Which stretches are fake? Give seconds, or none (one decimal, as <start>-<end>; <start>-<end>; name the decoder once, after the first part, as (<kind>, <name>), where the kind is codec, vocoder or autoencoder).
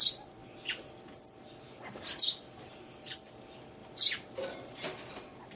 none